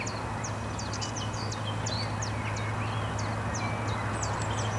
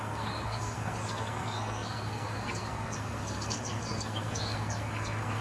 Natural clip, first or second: first